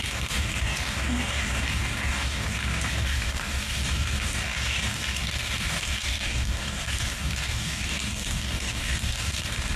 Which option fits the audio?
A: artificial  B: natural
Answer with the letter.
A